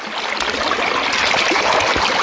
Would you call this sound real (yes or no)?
yes